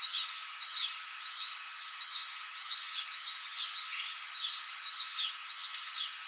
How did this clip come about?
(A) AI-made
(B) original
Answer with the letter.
A